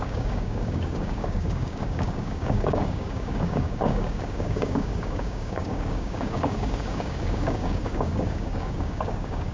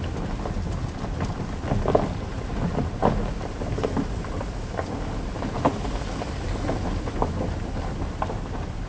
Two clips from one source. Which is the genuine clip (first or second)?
second